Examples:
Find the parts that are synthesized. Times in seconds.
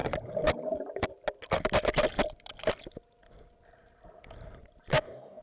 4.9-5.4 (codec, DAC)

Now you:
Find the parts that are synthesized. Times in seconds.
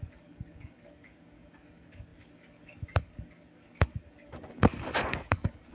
0.0-5.7 (codec, DAC)